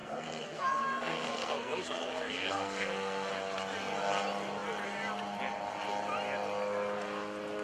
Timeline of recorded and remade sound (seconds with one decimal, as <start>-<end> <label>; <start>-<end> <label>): 0.0-3.3 remade; 3.3-7.6 recorded